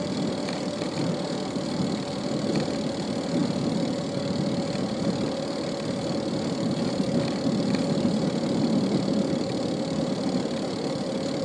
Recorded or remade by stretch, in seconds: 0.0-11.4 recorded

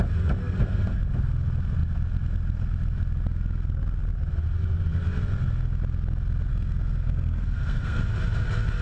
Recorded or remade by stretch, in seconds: 0.0-0.4 recorded; 0.4-1.0 remade; 1.0-6.5 recorded; 6.5-8.0 remade; 8.0-8.8 recorded

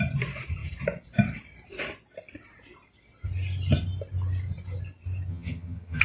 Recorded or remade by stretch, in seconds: 0.0-5.3 recorded; 5.3-6.0 remade

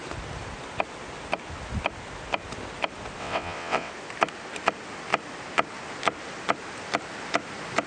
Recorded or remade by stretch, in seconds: 0.0-3.2 recorded; 3.2-3.9 remade; 3.9-7.9 recorded

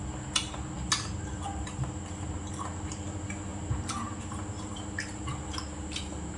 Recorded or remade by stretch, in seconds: 0.0-6.4 recorded

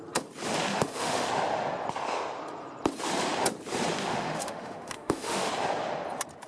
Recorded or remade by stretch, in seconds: 0.0-0.7 recorded; 0.7-1.3 remade; 1.3-4.0 recorded; 4.0-5.5 remade; 5.5-6.5 recorded

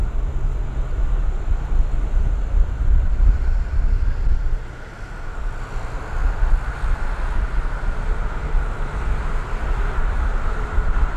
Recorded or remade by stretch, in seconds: 0.0-11.2 recorded